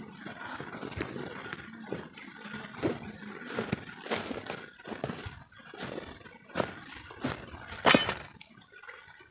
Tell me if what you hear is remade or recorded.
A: recorded